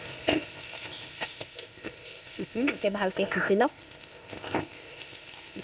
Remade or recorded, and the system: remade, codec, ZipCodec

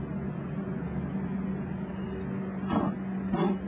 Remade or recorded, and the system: recorded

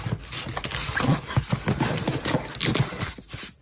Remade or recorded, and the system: recorded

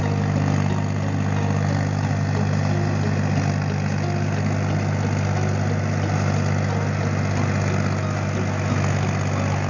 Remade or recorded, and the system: recorded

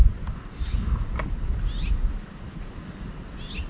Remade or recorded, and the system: recorded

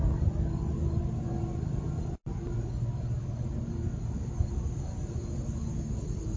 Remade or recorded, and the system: recorded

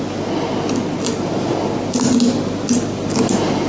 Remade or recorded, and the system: recorded